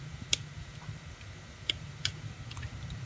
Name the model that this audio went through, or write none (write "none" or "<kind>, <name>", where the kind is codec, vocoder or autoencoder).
vocoder, BigVGAN v2